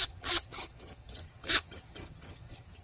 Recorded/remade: remade